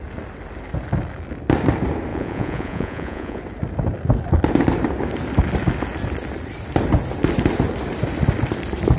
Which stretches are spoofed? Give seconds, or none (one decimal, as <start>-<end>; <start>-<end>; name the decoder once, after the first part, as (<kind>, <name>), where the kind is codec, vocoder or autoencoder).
2.1-3.4 (vocoder, Vocos)